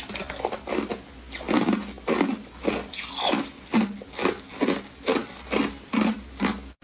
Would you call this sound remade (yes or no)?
no